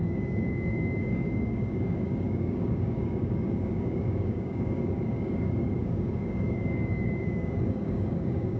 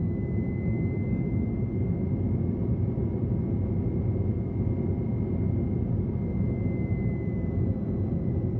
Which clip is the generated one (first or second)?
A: first